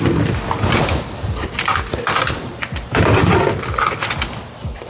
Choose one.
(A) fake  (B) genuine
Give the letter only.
B